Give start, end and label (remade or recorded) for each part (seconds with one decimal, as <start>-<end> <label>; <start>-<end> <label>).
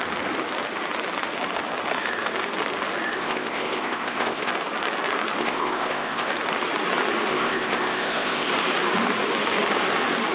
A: 0.0-3.1 recorded; 3.1-4.5 remade; 4.5-5.4 recorded; 5.4-6.3 remade; 6.3-7.3 recorded; 7.3-8.5 remade; 8.5-10.3 recorded